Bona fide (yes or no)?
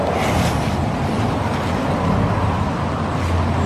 yes